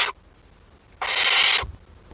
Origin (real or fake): real